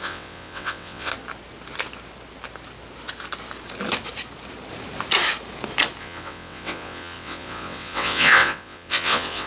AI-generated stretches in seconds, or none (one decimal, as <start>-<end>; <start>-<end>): 0.0-1.1; 6.0-9.5